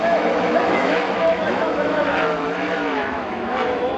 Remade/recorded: remade